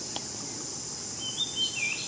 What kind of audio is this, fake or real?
real